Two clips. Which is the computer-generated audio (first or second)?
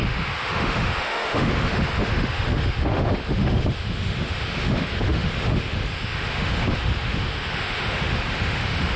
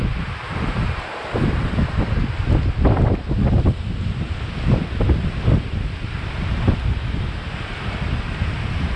first